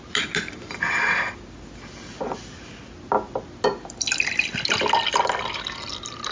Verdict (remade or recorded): recorded